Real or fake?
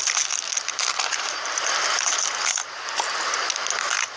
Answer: real